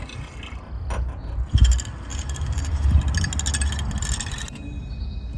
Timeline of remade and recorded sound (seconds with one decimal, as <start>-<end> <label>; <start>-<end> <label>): 0.0-2.1 recorded; 2.1-3.0 remade; 3.0-5.4 recorded